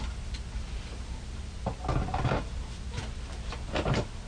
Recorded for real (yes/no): yes